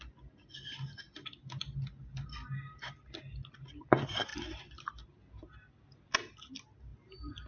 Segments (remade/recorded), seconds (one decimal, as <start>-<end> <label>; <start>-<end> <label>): 0.0-4.3 recorded; 4.3-4.9 remade; 4.9-7.5 recorded